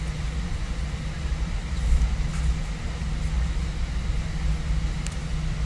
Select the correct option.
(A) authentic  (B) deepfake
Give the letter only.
A